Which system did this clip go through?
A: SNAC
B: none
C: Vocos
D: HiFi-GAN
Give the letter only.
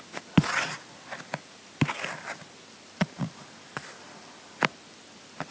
B